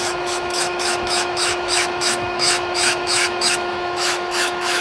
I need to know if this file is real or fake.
fake